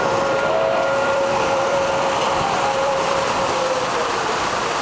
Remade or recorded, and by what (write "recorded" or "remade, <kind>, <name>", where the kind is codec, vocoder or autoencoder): remade, vocoder, BigVGAN v2